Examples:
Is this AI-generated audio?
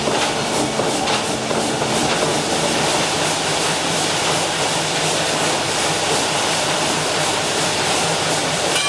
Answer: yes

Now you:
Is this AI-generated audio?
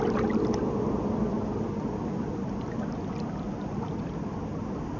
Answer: no